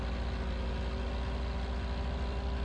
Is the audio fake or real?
real